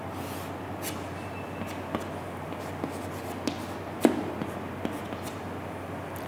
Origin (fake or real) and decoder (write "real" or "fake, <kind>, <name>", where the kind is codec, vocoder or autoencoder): real